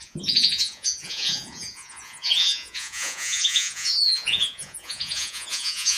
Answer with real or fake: fake